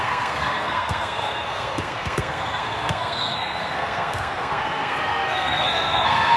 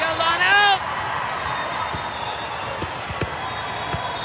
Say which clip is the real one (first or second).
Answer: second